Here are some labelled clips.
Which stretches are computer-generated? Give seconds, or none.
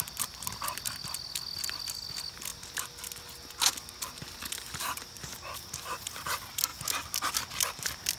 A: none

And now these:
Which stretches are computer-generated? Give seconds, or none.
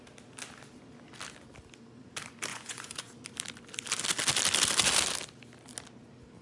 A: 2.5-3.1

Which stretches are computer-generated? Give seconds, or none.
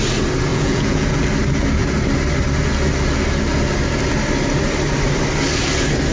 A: 0.5-1.2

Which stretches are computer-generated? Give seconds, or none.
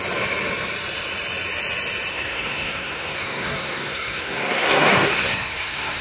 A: 2.1-6.0